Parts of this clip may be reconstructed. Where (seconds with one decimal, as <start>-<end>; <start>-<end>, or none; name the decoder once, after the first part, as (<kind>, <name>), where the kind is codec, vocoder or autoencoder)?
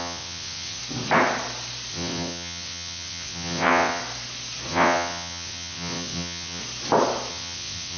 0.0-0.8 (vocoder, WaveNeXt); 1.9-4.0; 4.7-6.6; 7.3-8.0